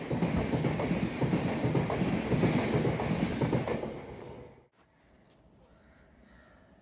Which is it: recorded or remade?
recorded